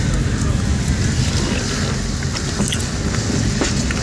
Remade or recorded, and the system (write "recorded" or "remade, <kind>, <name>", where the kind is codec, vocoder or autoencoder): recorded